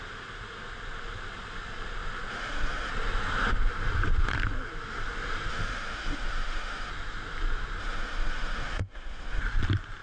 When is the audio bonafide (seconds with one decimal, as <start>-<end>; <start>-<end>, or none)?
0.0-2.3; 2.9-5.5; 6.9-7.8; 9.4-10.0

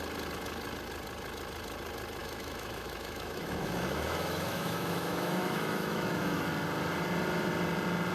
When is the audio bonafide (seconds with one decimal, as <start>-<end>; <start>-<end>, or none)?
0.0-2.2; 6.5-8.1

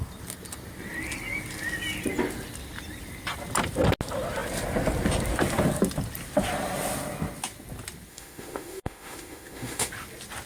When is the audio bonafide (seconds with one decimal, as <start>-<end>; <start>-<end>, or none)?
0.0-8.1; 9.9-10.5

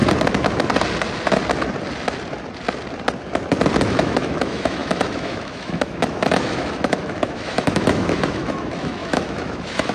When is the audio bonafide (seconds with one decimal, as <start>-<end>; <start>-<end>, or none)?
0.0-3.9

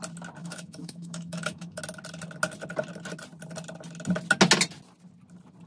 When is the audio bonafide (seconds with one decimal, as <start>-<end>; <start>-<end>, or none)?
0.0-0.4; 1.8-5.7

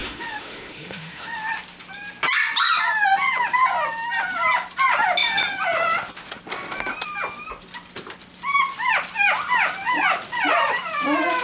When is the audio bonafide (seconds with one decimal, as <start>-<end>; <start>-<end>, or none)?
1.4-11.4